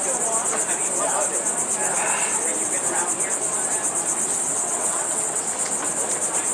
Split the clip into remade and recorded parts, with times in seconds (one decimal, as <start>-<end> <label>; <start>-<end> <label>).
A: 0.0-4.5 recorded; 4.5-5.4 remade; 5.4-6.5 recorded